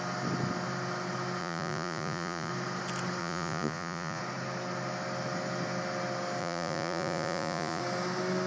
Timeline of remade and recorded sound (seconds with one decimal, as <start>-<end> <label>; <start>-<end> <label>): 0.0-1.4 recorded; 1.4-2.5 remade; 2.5-3.2 recorded; 3.2-4.2 remade; 4.2-6.4 recorded; 6.4-7.8 remade; 7.8-8.5 recorded